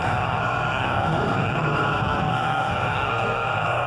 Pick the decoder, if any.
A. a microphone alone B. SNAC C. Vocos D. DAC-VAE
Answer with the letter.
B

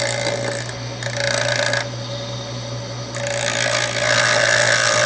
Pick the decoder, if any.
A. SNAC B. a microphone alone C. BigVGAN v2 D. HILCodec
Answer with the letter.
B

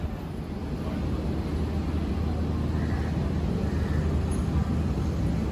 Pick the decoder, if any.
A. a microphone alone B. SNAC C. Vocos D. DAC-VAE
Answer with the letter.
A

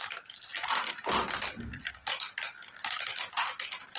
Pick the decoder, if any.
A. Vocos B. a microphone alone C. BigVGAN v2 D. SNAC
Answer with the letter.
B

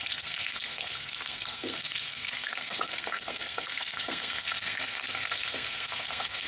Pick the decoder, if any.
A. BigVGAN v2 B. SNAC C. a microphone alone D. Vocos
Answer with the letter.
B